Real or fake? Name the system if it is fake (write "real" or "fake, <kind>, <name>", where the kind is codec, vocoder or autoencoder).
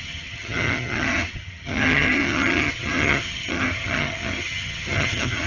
fake, vocoder, HiFi-GAN